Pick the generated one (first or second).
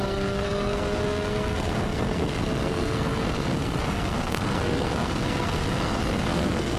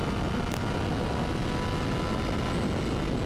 first